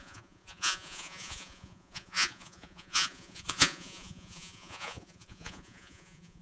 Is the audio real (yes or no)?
no